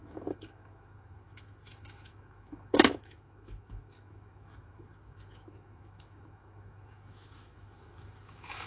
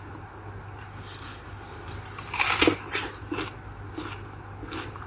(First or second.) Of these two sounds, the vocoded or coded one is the first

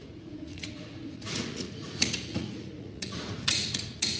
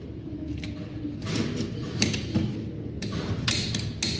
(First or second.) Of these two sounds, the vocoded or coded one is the first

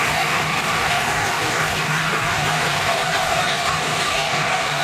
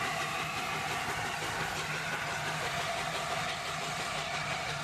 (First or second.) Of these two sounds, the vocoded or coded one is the first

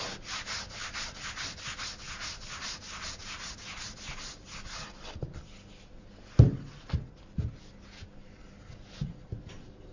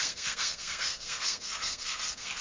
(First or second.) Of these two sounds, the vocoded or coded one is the second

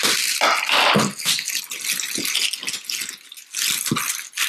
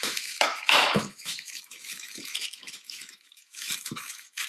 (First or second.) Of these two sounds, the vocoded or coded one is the second